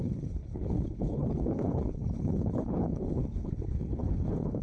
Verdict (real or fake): fake